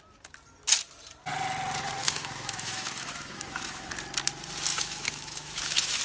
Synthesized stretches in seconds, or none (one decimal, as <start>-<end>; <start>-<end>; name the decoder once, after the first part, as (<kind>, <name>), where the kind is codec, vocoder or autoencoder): 2.0-3.9 (autoencoder, DAC-VAE); 4.7-6.0